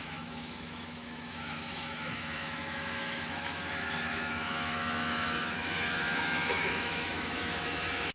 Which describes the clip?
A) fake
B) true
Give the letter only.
A